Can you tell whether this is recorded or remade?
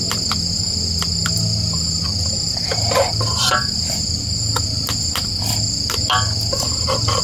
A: recorded